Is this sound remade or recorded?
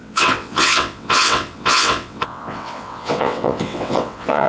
remade